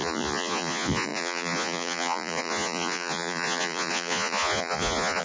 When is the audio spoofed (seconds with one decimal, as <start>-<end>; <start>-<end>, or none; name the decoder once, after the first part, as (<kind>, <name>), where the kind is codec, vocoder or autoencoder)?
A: 0.0-5.2 (vocoder, Vocos)